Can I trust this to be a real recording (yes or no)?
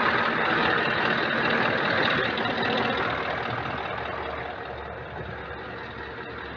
yes